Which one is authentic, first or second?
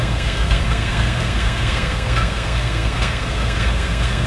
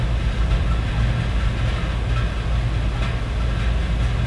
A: second